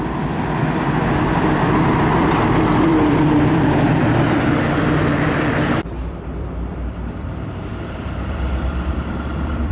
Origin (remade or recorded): remade